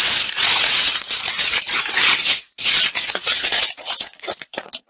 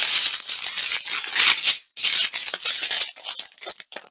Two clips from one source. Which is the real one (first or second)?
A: second